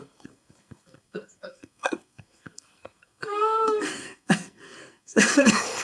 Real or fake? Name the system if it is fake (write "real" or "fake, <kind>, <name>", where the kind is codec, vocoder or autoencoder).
fake, codec, SNAC